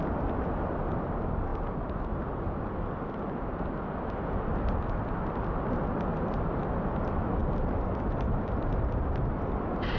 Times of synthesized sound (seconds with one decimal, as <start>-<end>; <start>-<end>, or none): none